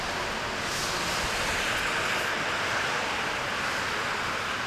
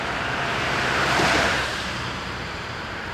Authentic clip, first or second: first